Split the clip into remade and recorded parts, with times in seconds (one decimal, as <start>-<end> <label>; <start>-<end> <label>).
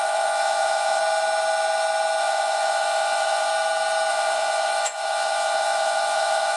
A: 0.0-1.0 remade; 1.0-2.2 recorded; 2.2-3.5 remade; 3.5-4.1 recorded; 4.1-6.6 remade